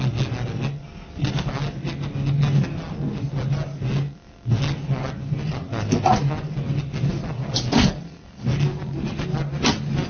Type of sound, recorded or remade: recorded